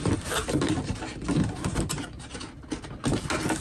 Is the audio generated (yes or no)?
no